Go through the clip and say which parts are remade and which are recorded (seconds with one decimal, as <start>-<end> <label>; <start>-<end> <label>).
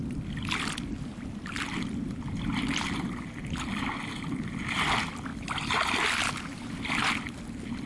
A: 0.0-7.9 recorded